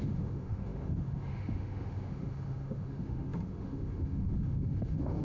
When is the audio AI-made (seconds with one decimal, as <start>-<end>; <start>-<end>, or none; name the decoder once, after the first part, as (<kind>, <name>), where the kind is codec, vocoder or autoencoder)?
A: 0.0-5.2 (autoencoder, DAC-VAE)